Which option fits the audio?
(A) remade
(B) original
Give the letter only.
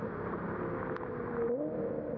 B